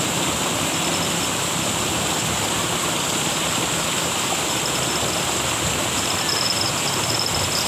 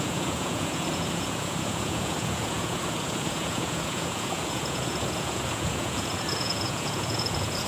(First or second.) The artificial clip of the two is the second